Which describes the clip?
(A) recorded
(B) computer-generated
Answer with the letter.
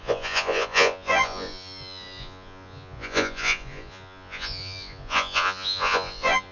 B